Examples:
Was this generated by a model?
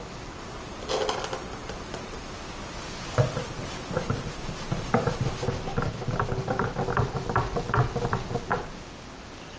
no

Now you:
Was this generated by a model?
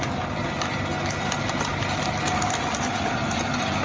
no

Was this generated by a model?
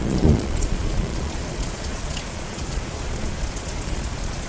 yes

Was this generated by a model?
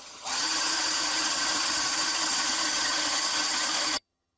yes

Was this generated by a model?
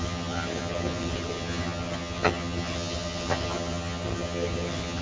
yes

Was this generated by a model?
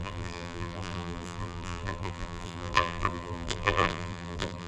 yes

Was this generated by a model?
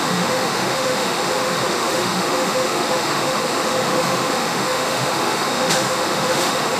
yes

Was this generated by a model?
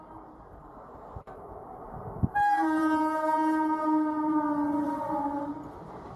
yes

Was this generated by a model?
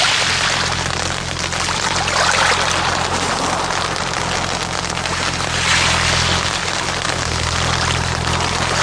no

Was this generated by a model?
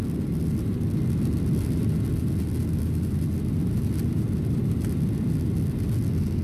no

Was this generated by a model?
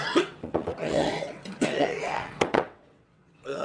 yes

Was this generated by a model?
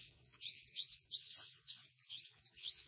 yes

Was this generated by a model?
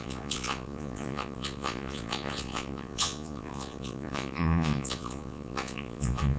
yes